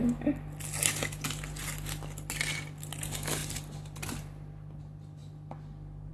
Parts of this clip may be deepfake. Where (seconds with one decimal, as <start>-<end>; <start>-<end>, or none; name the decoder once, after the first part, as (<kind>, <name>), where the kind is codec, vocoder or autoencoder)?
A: none